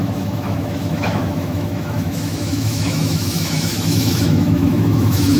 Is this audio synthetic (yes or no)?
yes